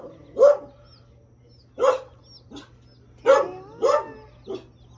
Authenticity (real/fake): real